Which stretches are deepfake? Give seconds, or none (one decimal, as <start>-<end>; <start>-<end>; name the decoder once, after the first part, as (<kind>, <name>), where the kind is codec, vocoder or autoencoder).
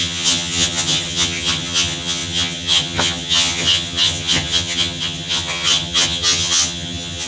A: 0.0-7.3 (vocoder, HiFi-GAN)